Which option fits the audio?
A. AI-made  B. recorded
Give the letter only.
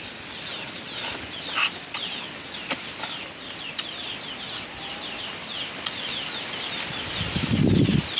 B